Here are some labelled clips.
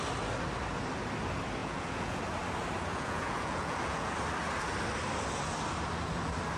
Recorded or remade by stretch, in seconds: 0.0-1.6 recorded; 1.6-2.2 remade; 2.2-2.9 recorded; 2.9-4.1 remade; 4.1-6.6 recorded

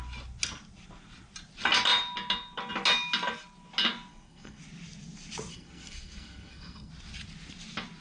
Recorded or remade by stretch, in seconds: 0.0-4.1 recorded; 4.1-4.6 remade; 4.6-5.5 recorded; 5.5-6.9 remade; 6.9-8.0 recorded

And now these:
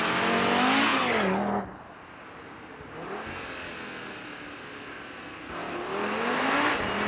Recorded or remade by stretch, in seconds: 0.0-7.1 recorded

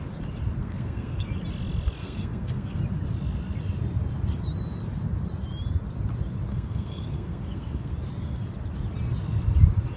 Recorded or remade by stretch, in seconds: 0.0-0.6 recorded; 0.6-1.3 remade; 1.3-2.0 recorded; 2.0-2.8 remade; 2.8-6.5 recorded; 6.5-7.9 remade; 7.9-10.0 recorded